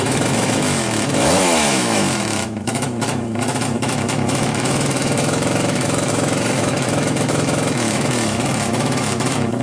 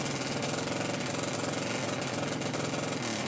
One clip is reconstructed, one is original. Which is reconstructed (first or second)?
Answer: first